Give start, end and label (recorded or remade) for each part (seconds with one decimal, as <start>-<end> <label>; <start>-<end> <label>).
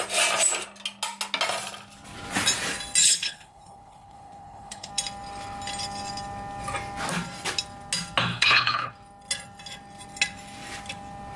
0.0-3.0 recorded; 3.0-4.9 remade; 4.9-8.3 recorded; 8.3-8.9 remade; 8.9-11.4 recorded